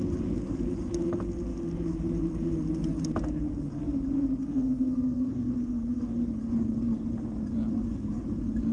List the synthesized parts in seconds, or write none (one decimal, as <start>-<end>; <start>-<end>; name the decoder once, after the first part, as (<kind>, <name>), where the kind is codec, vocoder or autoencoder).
4.4-6.0 (codec, SNAC)